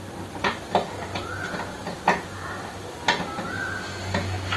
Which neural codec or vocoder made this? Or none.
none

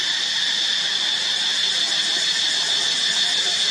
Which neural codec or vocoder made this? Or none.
none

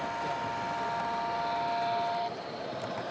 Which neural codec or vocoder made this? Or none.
none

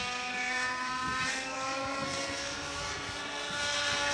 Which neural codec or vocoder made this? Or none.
codec, SNAC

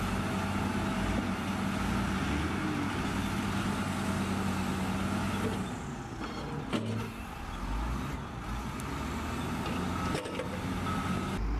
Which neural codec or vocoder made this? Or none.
none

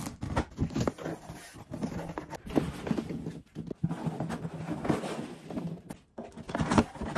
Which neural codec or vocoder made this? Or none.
none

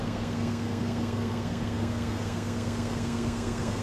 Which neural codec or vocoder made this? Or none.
codec, SNAC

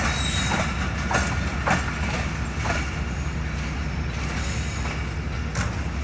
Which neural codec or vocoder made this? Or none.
none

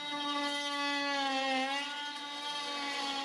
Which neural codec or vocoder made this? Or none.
none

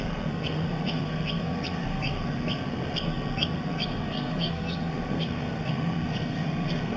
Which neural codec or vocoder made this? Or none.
codec, SNAC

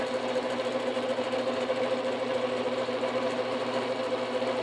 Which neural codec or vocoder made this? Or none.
none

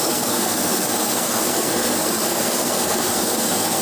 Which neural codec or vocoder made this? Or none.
codec, SNAC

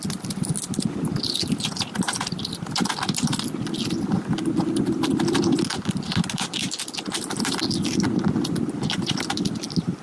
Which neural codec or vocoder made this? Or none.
none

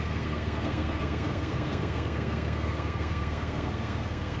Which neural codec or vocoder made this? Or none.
codec, SNAC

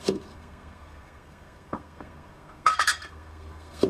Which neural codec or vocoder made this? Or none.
codec, SNAC